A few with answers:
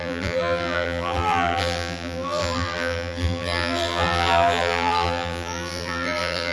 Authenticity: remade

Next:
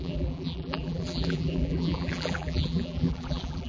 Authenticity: remade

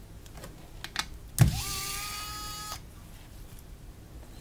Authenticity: recorded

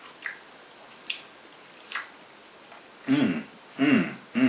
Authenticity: recorded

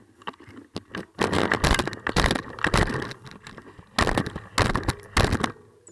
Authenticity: recorded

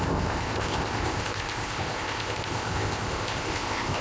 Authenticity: remade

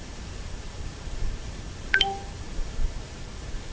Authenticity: remade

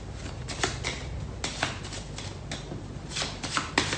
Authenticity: recorded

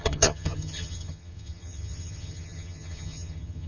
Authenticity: remade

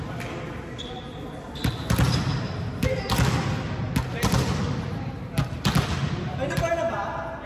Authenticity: recorded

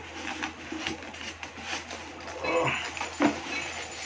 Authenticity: recorded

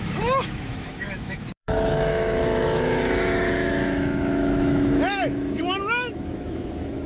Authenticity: remade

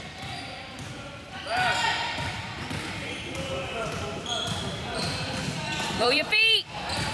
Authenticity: remade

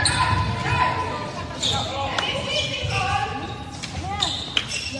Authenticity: recorded